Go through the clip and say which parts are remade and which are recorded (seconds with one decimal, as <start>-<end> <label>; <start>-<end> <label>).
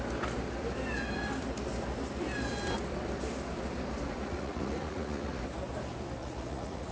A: 0.0-4.2 recorded; 4.2-5.4 remade; 5.4-6.2 recorded; 6.2-6.9 remade